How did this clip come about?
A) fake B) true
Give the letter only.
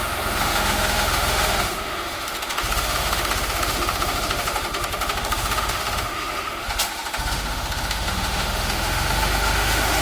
A